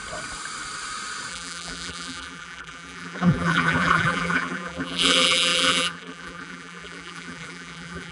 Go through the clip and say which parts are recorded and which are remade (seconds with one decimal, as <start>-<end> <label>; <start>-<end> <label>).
0.0-1.3 recorded; 1.3-8.1 remade